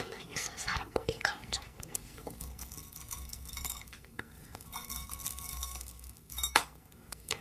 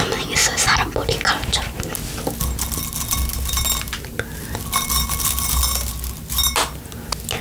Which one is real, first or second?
second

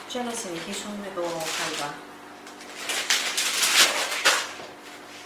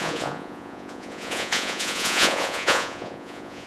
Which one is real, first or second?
first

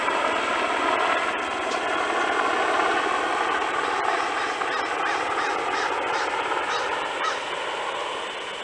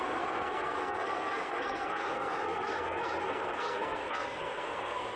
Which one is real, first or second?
first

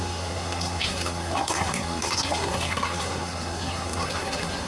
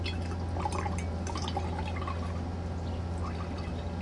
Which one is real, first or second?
second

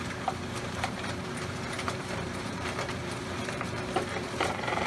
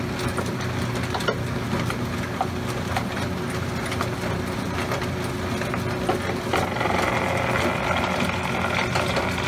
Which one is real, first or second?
second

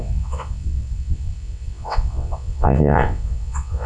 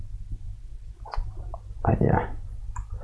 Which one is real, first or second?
second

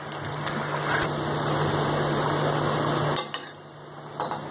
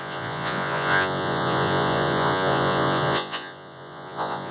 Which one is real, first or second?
first